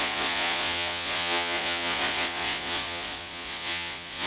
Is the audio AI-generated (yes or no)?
yes